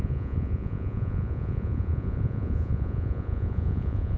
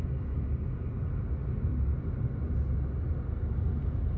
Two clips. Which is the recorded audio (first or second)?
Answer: second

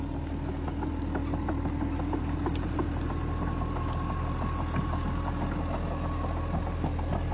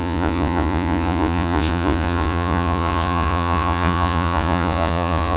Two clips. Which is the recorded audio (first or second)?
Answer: first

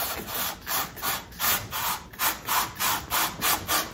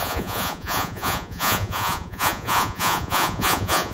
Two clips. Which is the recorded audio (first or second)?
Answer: first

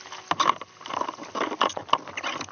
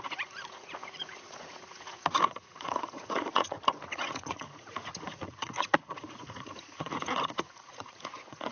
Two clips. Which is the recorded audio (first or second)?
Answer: first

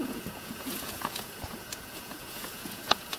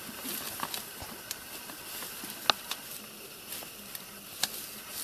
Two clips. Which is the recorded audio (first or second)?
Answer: second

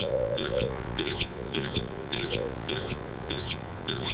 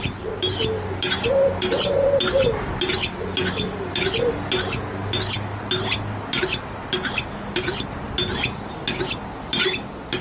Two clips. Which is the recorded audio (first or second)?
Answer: second